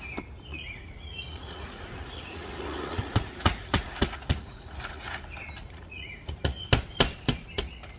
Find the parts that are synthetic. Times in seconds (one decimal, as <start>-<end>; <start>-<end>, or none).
0.5-5.1; 5.6-6.7

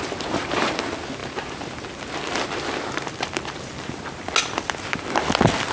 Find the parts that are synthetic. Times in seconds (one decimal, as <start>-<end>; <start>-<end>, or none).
none

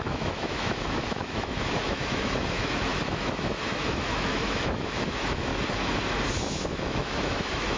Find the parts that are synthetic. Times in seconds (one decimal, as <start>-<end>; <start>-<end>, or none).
0.0-5.5; 6.4-7.8

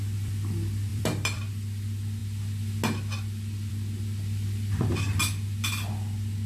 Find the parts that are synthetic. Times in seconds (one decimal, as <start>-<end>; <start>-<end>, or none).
0.9-1.4

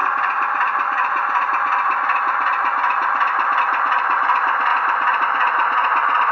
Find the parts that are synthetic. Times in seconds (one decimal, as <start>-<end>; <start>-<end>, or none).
none